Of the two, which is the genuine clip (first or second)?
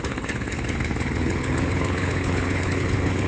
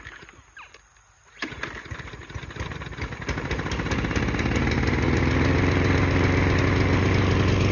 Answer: second